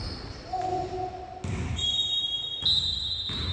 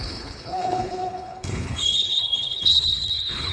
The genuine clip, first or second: first